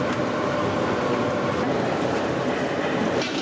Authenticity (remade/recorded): recorded